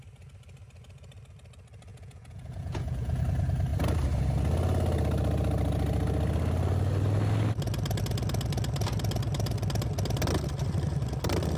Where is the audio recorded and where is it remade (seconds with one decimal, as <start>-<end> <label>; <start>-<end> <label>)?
0.0-1.9 recorded; 1.9-3.2 remade; 3.2-11.6 recorded